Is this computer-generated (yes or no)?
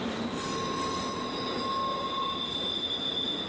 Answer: no